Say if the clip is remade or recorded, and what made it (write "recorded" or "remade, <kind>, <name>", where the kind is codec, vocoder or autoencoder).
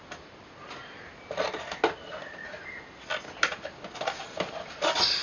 recorded